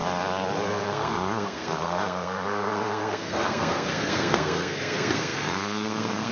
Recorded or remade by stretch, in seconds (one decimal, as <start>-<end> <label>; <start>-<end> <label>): 0.0-0.7 recorded; 0.7-6.3 remade